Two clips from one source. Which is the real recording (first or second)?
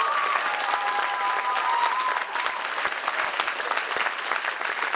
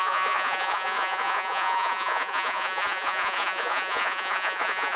first